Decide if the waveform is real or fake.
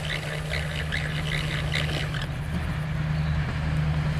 real